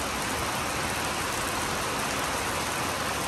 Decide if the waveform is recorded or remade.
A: recorded